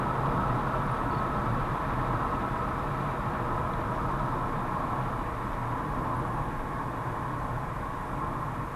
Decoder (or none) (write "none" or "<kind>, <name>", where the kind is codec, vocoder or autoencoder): none